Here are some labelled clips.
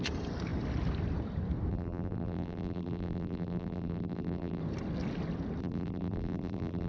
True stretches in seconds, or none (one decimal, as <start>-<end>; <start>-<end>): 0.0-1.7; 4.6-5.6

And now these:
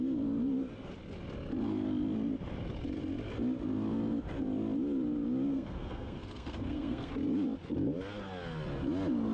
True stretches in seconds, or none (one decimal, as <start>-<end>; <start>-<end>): 0.0-5.5; 7.1-9.3

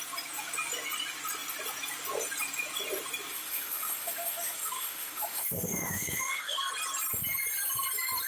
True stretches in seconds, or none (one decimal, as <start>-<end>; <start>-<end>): 0.0-3.3; 6.7-8.3

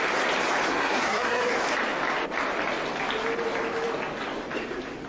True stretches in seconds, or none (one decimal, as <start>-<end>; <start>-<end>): 0.0-0.7; 1.5-5.1

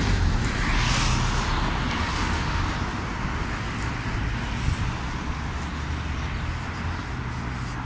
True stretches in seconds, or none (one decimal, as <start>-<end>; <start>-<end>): 0.0-2.0; 2.6-7.9

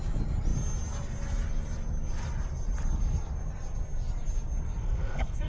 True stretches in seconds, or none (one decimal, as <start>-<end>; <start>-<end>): 0.0-4.8